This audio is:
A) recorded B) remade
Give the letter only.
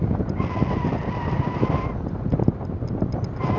A